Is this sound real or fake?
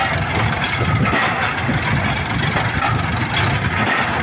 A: real